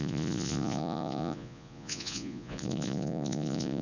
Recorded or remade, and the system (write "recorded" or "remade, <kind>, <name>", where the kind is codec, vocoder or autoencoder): remade, vocoder, Vocos